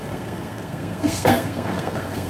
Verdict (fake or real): fake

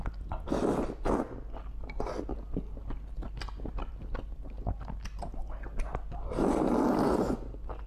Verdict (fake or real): real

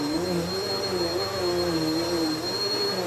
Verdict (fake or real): real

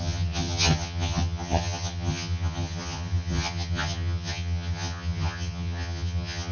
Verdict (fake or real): fake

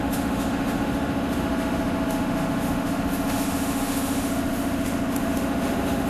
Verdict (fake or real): fake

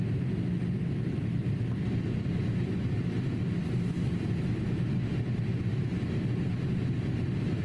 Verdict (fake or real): real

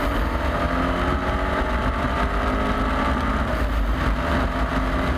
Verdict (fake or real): real